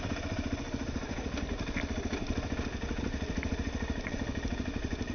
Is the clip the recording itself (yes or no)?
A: yes